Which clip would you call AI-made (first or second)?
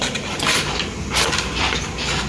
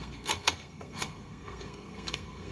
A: second